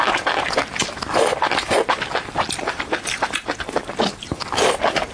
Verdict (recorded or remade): recorded